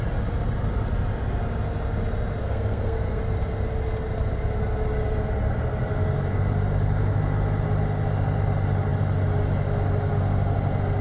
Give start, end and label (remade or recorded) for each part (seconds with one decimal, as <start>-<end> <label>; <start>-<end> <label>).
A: 0.0-2.4 recorded; 2.4-3.2 remade; 3.2-11.0 recorded